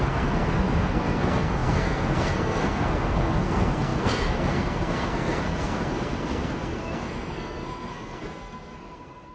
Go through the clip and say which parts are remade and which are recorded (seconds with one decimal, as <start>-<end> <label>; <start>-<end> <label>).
0.0-9.3 remade